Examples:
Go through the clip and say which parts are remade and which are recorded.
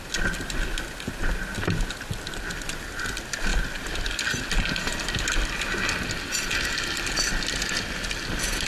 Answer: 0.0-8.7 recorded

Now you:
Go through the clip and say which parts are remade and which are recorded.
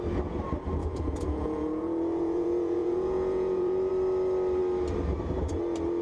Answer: 0.0-0.8 recorded; 0.8-3.9 remade; 3.9-6.0 recorded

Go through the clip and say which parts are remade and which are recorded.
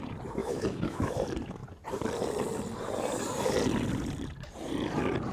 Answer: 0.0-0.4 recorded; 0.4-1.1 remade; 1.1-5.3 recorded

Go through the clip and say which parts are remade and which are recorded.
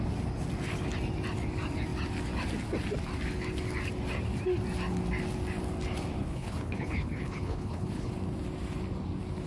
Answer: 0.0-6.2 recorded; 6.2-8.1 remade; 8.1-9.5 recorded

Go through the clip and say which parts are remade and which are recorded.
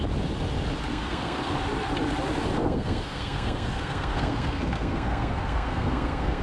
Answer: 0.0-0.9 recorded; 0.9-1.6 remade; 1.6-2.6 recorded; 2.6-6.4 remade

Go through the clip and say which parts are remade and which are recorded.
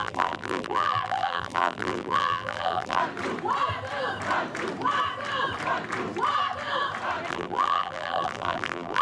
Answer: 0.0-3.0 remade; 3.0-7.3 recorded; 7.3-9.0 remade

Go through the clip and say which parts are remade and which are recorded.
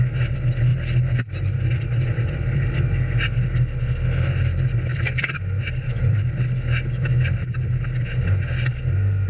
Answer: 0.0-0.7 recorded; 0.7-2.8 remade; 2.8-4.9 recorded; 4.9-6.1 remade; 6.1-9.3 recorded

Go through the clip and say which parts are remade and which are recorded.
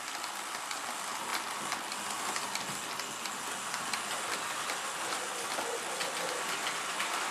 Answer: 0.0-7.3 recorded